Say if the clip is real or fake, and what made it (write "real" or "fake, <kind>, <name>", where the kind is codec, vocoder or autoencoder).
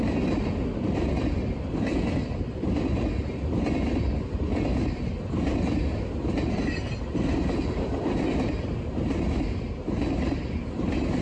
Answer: real